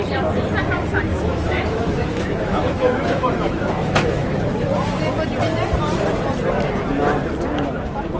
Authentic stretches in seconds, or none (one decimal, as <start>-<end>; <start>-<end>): 0.0-1.1; 4.5-8.2